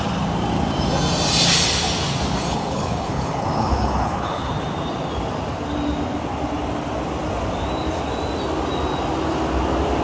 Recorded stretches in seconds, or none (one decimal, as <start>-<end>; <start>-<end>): 0.0-2.5; 4.5-10.0